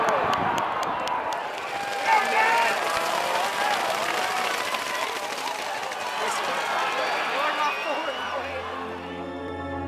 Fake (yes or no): no